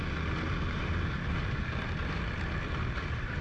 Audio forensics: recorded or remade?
recorded